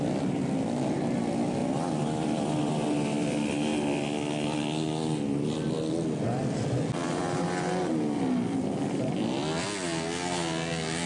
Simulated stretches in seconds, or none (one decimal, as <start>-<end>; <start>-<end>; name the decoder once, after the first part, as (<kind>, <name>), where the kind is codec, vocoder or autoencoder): none

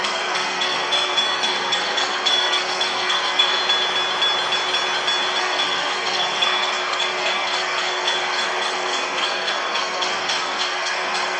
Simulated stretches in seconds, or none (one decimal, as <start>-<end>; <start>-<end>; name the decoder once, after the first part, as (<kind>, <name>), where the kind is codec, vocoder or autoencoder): 0.0-3.6 (codec, SNAC); 5.4-11.4

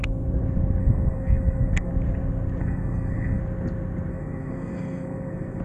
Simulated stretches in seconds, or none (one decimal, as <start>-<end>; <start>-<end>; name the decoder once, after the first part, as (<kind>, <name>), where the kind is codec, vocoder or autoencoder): 0.8-1.9 (codec, SNAC); 2.6-3.4; 4.1-5.6

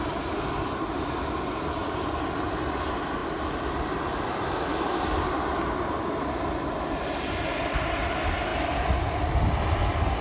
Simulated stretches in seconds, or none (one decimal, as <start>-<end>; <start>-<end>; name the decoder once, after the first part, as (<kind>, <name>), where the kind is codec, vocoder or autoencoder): none